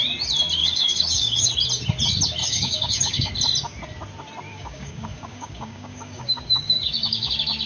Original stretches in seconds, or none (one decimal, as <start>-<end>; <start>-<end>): 0.0-0.6; 1.5-2.4; 3.3-4.5; 7.3-7.7